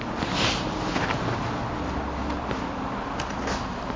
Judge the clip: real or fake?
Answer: real